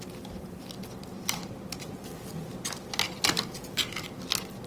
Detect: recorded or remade recorded